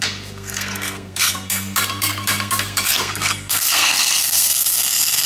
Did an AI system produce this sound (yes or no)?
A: yes